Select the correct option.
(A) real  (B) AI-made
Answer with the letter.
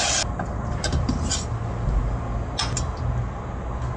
A